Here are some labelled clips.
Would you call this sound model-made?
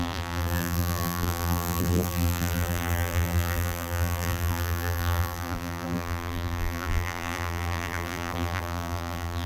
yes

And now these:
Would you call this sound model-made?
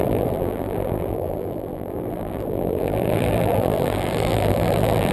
yes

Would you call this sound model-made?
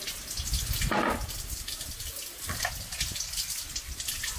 no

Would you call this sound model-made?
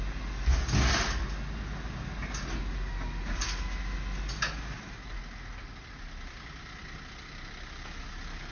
no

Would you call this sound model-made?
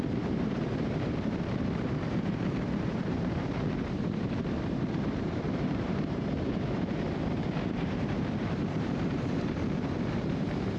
yes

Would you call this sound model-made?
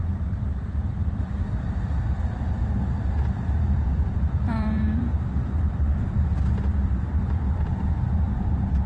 yes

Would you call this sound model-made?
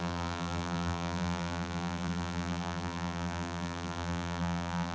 yes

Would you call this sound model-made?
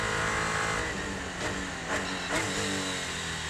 no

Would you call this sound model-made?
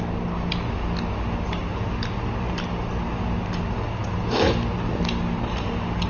no